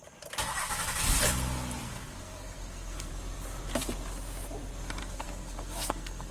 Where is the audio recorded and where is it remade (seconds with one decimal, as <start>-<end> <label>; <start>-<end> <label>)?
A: 0.0-1.8 recorded; 1.8-3.1 remade; 3.1-5.0 recorded; 5.0-6.3 remade